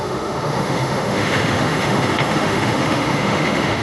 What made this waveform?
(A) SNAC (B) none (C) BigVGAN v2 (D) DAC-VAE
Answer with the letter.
D